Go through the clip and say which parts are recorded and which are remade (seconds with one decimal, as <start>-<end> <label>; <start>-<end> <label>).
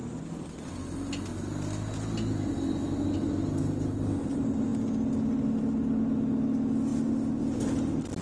0.0-8.2 recorded